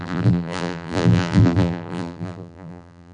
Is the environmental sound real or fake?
fake